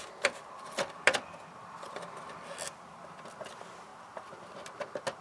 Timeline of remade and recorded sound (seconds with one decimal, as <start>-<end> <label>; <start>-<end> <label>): 0.0-5.2 recorded